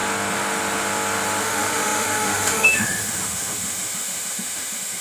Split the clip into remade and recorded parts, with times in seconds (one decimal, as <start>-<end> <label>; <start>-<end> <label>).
0.0-1.4 recorded; 1.4-5.0 remade